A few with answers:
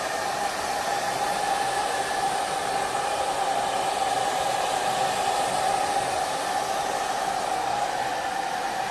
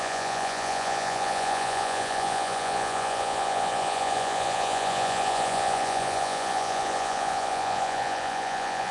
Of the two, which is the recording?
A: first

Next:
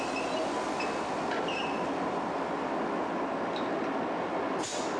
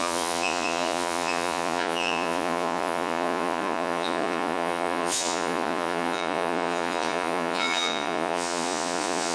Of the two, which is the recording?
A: first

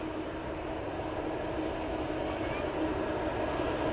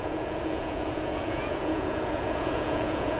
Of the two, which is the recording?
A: first